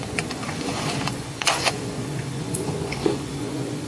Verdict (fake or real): fake